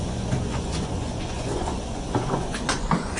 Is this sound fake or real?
fake